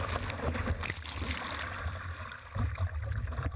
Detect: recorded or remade remade